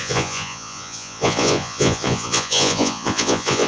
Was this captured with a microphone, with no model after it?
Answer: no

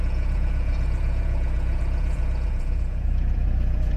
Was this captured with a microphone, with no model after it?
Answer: no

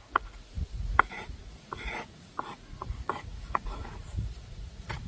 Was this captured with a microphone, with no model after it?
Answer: no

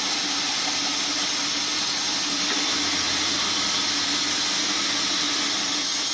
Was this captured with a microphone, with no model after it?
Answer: yes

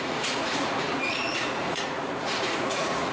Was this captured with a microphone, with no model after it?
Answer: no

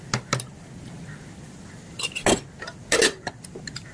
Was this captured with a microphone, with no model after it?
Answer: yes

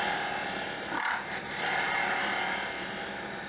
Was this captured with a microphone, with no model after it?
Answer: yes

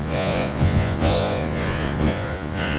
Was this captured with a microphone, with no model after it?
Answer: no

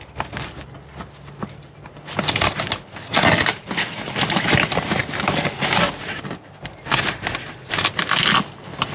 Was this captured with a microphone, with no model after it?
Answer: yes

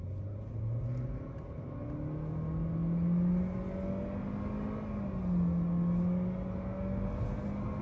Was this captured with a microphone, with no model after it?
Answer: yes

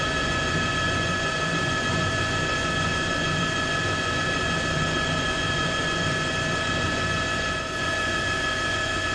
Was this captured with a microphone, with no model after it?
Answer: no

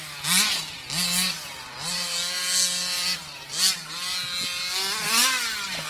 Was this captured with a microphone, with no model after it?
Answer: yes